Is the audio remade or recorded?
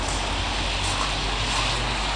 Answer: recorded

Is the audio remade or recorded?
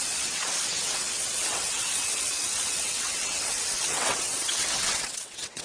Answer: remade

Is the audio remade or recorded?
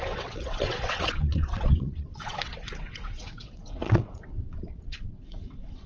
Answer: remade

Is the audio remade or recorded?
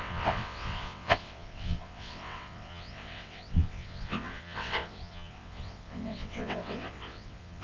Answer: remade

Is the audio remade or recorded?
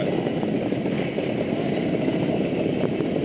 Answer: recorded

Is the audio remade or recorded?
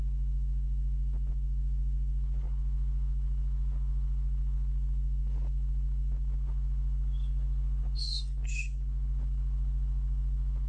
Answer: recorded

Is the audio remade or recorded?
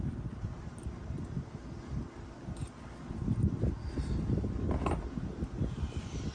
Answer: recorded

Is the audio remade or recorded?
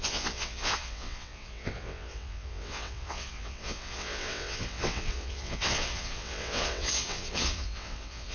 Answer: remade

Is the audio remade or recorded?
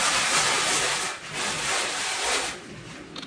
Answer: recorded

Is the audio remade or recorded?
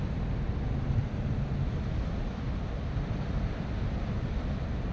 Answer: recorded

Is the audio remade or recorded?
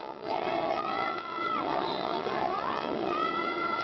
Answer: remade